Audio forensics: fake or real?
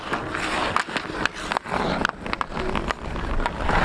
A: real